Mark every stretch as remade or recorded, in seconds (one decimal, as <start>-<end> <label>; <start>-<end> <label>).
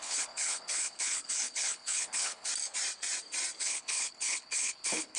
0.0-2.5 remade; 2.5-3.6 recorded; 3.6-5.2 remade